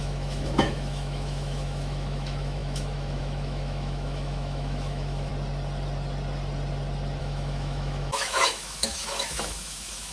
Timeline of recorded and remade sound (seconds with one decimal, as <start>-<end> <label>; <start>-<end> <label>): 0.0-5.3 remade; 5.3-7.2 recorded; 7.2-10.1 remade